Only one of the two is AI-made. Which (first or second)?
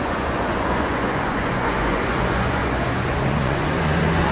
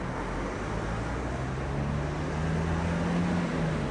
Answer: first